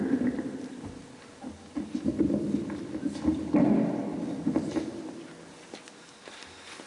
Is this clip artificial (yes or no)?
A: no